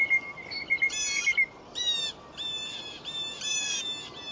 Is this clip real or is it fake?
real